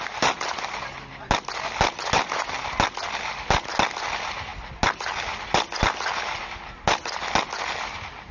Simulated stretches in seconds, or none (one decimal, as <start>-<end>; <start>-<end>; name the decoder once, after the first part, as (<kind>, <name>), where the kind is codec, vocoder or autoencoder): none